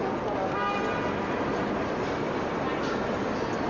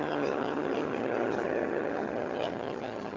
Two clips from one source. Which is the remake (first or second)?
second